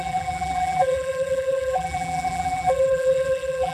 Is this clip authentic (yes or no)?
no